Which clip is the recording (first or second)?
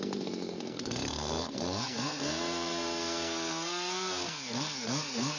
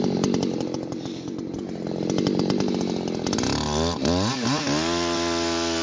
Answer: second